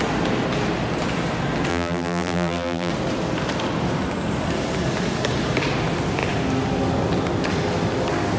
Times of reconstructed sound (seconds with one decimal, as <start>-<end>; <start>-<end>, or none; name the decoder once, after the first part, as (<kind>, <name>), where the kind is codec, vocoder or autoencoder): 1.7-2.9 (vocoder, BigVGAN v2)